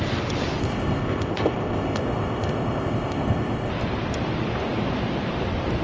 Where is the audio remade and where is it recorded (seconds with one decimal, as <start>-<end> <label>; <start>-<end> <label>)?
0.0-0.6 recorded; 0.6-3.7 remade; 3.7-5.8 recorded